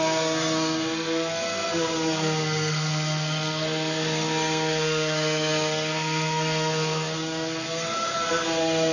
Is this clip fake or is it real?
fake